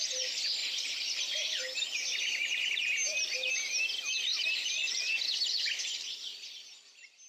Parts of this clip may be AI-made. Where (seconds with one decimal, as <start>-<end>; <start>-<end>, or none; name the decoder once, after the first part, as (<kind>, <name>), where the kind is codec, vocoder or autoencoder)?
0.6-1.6 (vocoder, BigVGAN v2); 4.3-4.9